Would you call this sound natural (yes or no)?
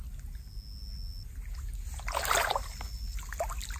yes